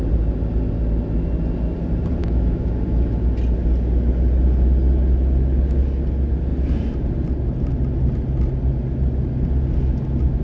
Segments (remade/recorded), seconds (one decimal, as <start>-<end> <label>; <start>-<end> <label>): 0.0-2.2 recorded; 2.2-2.7 remade; 2.7-10.4 recorded